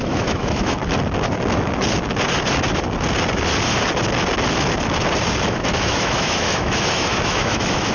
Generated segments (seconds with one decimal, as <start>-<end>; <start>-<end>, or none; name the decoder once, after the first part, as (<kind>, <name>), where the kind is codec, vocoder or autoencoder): 0.0-0.8 (autoencoder, DAC-VAE); 5.5-7.9